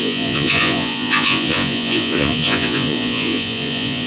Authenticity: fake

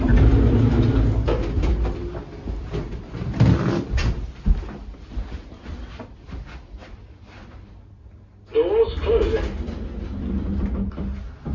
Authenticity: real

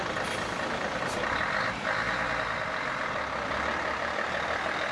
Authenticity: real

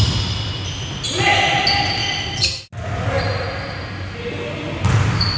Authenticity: real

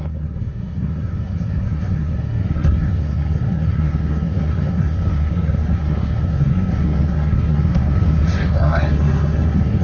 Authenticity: fake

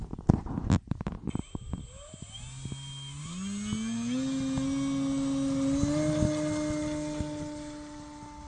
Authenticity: real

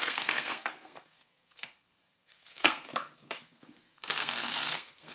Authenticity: fake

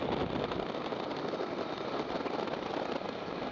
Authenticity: real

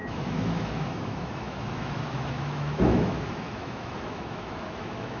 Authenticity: fake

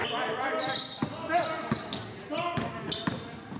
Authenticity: real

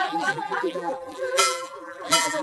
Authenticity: fake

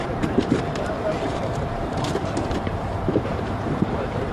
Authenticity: fake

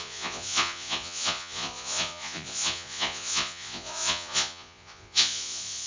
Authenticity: fake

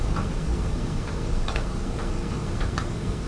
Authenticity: fake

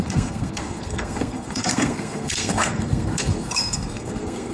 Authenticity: fake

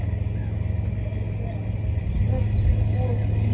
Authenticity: real